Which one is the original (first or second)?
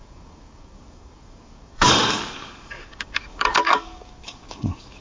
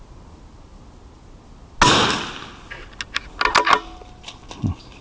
second